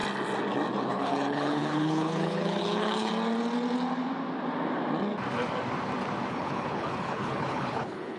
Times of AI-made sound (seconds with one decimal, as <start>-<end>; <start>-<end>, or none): 0.9-3.1; 6.3-8.2

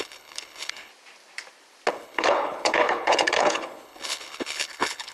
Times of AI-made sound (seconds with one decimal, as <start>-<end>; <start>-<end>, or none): 0.0-0.9; 1.9-5.1